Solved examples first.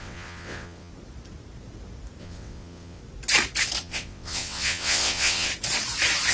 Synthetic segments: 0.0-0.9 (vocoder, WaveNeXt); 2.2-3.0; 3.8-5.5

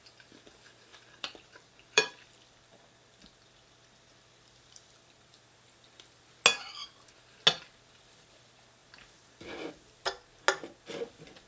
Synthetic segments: 0.9-5.3 (vocoder, BigVGAN v2)